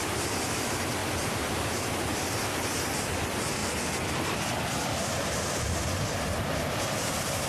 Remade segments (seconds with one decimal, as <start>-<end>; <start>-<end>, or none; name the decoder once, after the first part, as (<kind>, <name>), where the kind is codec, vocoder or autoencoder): 0.0-1.0 (vocoder, BigVGAN v2); 1.8-3.6; 6.8-7.5